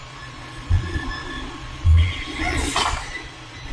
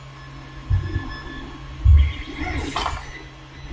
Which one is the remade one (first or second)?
first